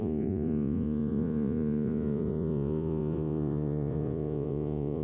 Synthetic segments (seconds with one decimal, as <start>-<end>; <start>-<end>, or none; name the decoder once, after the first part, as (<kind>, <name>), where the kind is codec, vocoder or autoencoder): 0.0-5.0 (vocoder, Vocos)